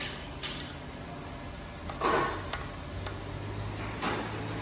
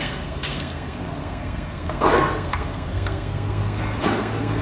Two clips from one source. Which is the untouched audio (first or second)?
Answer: first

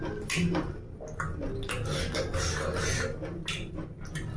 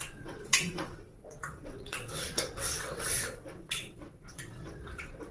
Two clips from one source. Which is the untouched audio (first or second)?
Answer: first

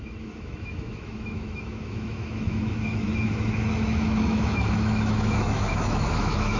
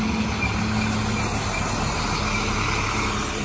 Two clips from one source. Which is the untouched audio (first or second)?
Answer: second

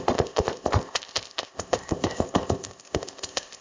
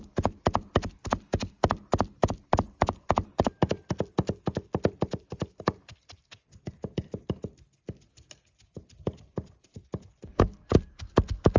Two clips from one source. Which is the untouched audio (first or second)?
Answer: second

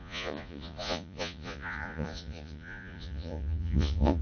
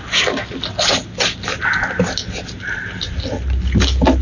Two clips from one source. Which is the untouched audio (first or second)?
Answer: second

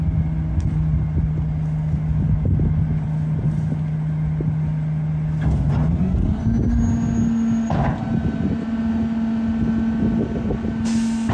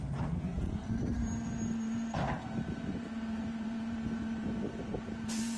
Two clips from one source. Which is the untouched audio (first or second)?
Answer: first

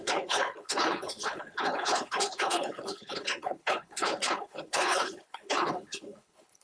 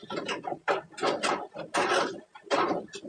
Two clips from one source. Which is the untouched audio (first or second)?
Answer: second